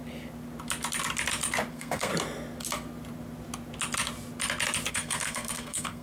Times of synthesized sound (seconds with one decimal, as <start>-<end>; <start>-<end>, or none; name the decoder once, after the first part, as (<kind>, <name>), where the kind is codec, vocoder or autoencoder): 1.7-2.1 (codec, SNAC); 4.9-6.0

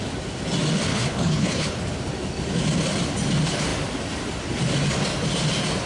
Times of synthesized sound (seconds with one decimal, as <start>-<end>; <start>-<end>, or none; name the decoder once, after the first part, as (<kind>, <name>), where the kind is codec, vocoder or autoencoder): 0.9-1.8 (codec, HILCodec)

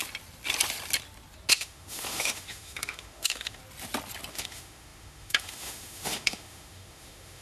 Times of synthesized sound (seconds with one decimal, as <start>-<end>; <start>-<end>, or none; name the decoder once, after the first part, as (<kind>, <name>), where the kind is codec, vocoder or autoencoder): 1.5-3.6 (autoencoder, DAC-VAE); 4.3-7.4

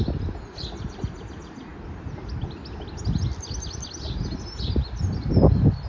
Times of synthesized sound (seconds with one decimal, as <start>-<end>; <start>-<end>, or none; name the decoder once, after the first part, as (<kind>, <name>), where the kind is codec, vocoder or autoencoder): none

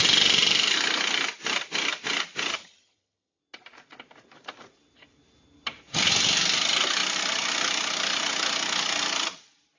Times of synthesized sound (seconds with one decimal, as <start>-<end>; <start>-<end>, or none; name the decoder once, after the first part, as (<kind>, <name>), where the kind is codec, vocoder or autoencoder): 2.5-3.4 (vocoder, HiFi-GAN)

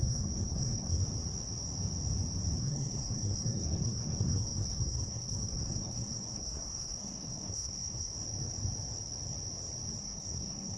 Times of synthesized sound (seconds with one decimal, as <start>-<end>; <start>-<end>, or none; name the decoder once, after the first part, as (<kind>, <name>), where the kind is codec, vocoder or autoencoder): 0.0-1.0 (codec, SNAC); 2.6-8.1; 10.0-10.8